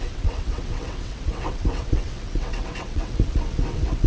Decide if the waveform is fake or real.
fake